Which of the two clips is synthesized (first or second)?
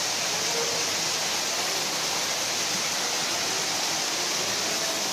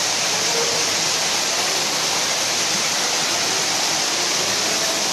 second